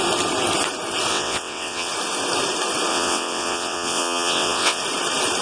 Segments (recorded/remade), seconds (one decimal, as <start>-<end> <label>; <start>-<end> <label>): 0.0-1.1 recorded; 1.1-1.9 remade; 1.9-2.9 recorded; 2.9-4.8 remade; 4.8-5.4 recorded